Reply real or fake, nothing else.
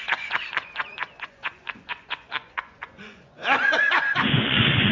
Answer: fake